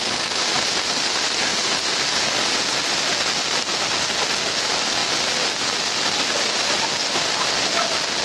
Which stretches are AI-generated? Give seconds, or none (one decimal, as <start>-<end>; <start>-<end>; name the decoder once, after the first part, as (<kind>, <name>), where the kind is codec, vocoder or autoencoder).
none